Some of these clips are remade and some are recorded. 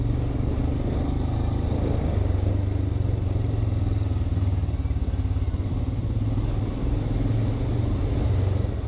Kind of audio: recorded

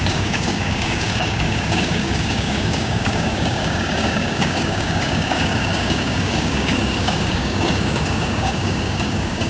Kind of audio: remade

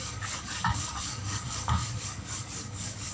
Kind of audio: remade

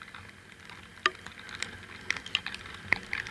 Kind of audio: recorded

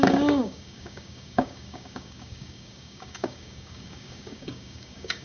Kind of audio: remade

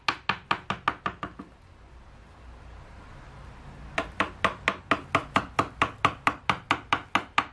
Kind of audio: recorded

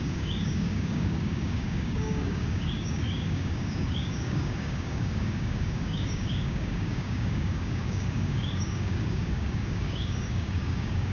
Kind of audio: remade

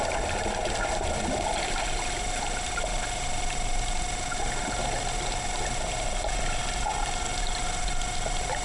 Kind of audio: recorded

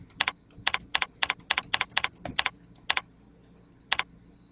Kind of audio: recorded